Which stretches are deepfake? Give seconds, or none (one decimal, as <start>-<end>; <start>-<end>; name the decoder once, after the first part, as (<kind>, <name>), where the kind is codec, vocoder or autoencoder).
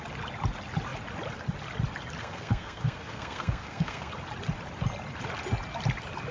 2.2-4.1 (codec, SNAC)